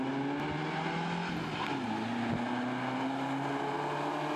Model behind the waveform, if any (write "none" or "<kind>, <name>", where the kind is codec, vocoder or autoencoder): none